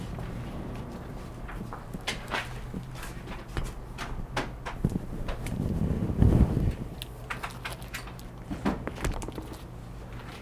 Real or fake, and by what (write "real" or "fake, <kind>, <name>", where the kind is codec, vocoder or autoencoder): real